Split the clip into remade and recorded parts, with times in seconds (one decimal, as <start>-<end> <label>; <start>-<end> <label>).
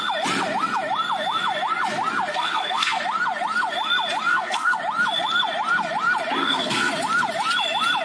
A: 0.0-2.3 recorded; 2.3-3.0 remade; 3.0-4.3 recorded; 4.3-4.8 remade; 4.8-6.4 recorded; 6.4-6.9 remade; 6.9-8.0 recorded